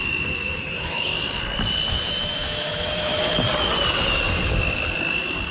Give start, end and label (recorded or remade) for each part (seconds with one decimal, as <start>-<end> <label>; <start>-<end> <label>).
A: 0.0-1.1 remade; 1.1-1.9 recorded; 1.9-3.1 remade; 3.1-5.5 recorded